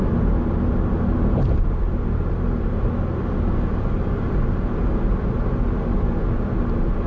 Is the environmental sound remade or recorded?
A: recorded